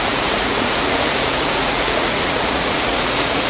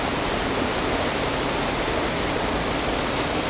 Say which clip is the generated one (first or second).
first